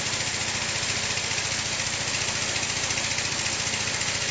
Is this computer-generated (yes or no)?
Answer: no